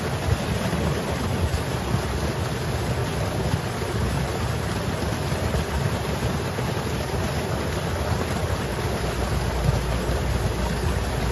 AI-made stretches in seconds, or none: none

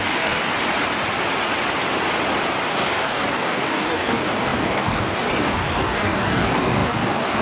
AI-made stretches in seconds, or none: 0.0-0.5 (codec, DAC); 2.7-7.4

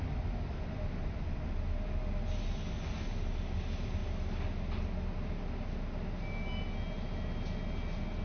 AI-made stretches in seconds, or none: none

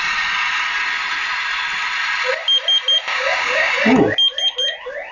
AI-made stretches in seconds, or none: 3.1-3.7 (codec, DAC)

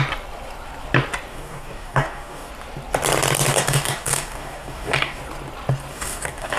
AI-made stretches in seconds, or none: 1.3-2.5 (codec, DAC); 3.5-5.2; 5.9-6.6